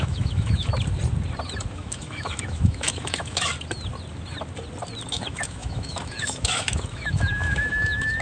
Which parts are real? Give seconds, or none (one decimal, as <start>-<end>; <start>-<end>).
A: 0.7-1.7; 3.5-5.1